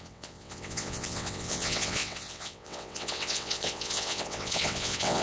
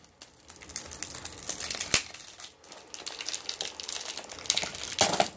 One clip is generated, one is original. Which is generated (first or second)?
first